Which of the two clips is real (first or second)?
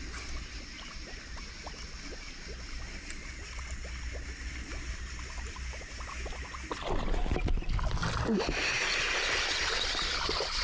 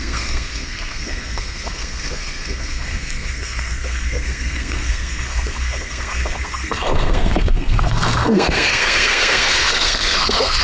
first